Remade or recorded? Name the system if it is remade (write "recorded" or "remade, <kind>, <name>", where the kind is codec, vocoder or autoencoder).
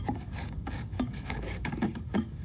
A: remade, codec, DAC